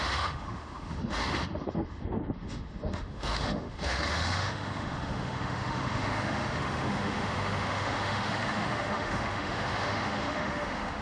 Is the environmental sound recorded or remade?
remade